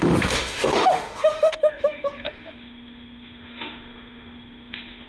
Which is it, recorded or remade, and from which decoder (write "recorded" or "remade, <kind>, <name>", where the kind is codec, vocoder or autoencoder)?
remade, autoencoder, DAC-VAE